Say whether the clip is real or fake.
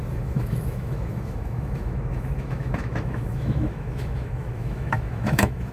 fake